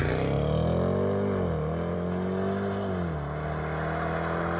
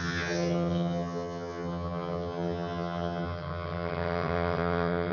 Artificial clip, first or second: second